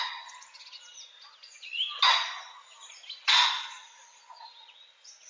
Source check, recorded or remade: recorded